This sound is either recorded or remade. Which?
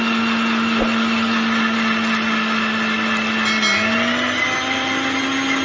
recorded